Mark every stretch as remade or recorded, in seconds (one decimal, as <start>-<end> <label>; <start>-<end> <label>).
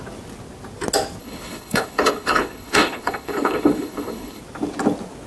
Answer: 0.0-1.2 recorded; 1.2-4.4 remade; 4.4-5.3 recorded